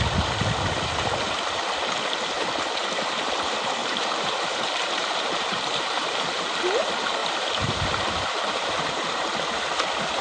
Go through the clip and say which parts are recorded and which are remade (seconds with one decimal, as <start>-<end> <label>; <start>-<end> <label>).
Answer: 0.0-3.8 recorded; 3.8-6.4 remade; 6.4-7.2 recorded; 7.2-9.3 remade; 9.3-10.2 recorded